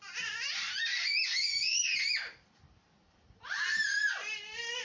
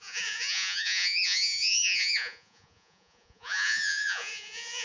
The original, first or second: first